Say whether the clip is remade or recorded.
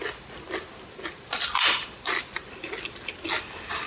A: recorded